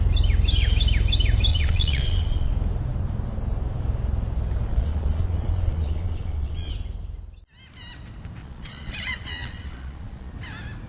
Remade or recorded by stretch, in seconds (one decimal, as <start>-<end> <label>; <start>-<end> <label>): 0.0-1.5 recorded; 1.5-2.5 remade; 2.5-4.7 recorded; 4.7-6.7 remade; 6.7-8.4 recorded; 8.4-10.3 remade; 10.3-10.9 recorded